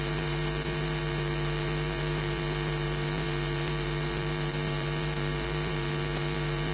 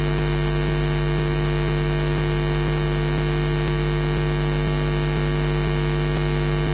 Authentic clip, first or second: second